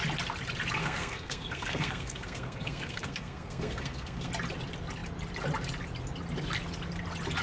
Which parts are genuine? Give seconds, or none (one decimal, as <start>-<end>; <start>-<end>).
0.0-0.8; 4.3-7.4